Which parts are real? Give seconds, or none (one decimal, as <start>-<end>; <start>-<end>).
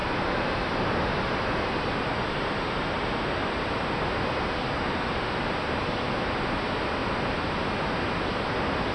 0.9-8.9